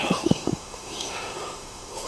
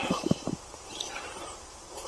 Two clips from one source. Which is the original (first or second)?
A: second